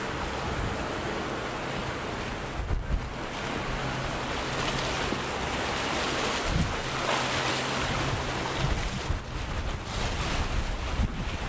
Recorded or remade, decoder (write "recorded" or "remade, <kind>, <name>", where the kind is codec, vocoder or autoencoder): recorded